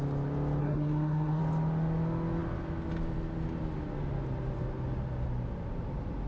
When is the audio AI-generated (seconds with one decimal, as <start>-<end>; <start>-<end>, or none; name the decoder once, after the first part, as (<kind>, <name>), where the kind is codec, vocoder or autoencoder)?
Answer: 0.6-1.4 (codec, SNAC)